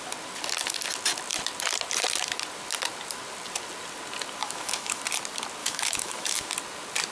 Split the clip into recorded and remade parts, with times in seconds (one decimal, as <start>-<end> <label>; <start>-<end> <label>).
0.0-4.4 recorded; 4.4-5.0 remade; 5.0-5.6 recorded; 5.6-6.5 remade; 6.5-7.1 recorded